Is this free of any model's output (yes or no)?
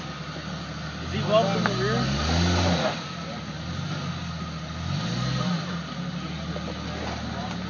yes